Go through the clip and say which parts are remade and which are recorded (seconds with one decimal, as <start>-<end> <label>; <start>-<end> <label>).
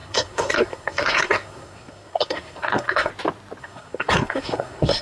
0.0-3.1 remade; 3.1-3.6 recorded; 3.6-5.0 remade